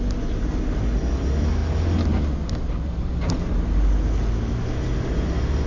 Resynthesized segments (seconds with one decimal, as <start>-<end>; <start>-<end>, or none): none